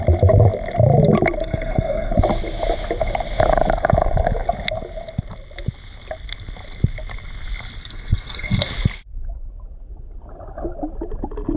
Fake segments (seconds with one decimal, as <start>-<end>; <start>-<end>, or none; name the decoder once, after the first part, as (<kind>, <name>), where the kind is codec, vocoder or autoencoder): 1.4-2.1 (codec, SNAC); 7.8-8.7